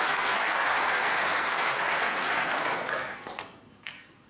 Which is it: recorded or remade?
remade